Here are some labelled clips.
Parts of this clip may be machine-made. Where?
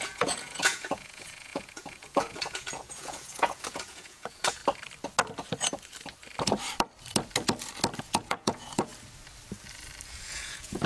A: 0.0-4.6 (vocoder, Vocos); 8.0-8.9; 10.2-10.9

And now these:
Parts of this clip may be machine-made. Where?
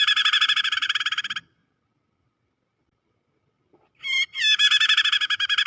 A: none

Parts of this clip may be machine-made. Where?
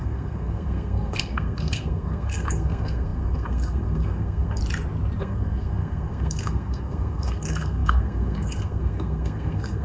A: 0.0-4.6 (codec, SNAC); 5.2-9.8